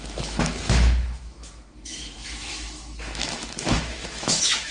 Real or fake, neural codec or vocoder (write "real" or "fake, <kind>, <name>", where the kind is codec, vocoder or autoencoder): fake, autoencoder, DAC-VAE